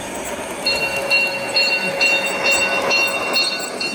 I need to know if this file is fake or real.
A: real